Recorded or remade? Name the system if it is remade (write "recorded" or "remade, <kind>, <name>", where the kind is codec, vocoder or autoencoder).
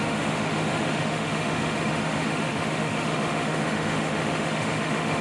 remade, autoencoder, DAC-VAE